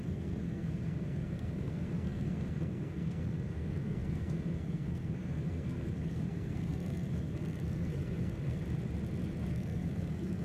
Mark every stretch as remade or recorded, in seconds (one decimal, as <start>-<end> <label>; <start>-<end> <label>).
0.0-8.6 remade; 8.6-9.5 recorded; 9.5-10.4 remade

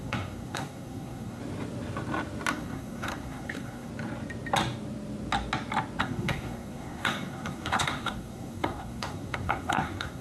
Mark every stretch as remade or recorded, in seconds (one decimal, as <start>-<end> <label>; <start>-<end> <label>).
0.0-1.4 remade; 1.4-2.5 recorded; 2.5-3.9 remade; 3.9-6.0 recorded; 6.0-10.2 remade

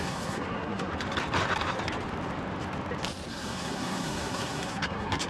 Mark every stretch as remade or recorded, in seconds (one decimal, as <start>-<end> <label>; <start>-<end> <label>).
0.0-0.9 remade; 0.9-3.3 recorded; 3.3-5.3 remade

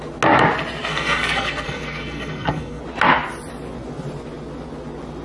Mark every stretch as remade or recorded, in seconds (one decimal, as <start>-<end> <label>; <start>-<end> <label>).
0.0-0.9 recorded; 0.9-2.8 remade; 2.8-5.2 recorded

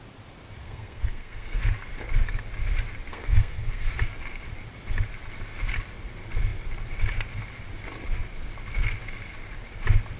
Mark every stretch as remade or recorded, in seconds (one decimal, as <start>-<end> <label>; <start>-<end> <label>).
0.0-0.6 recorded; 0.6-1.6 remade; 1.6-3.1 recorded; 3.1-3.9 remade; 3.9-10.2 recorded

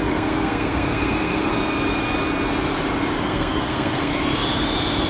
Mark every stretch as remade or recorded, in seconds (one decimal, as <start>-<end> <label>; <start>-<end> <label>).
0.0-1.5 remade; 1.5-3.2 recorded; 3.2-4.1 remade; 4.1-5.1 recorded